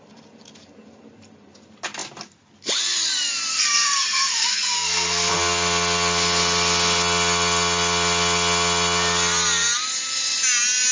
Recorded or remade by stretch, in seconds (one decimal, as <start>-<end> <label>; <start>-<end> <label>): 0.0-3.5 recorded; 3.5-5.3 remade; 5.3-10.9 recorded